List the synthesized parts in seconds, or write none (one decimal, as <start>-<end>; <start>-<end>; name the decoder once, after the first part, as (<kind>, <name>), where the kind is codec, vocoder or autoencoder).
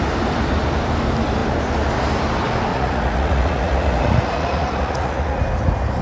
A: 2.7-5.4 (vocoder, Vocos)